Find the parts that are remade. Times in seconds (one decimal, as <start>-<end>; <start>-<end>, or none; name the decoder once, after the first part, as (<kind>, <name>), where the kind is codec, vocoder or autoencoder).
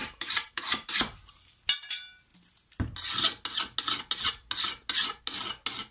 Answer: 0.0-0.9 (vocoder, BigVGAN v2)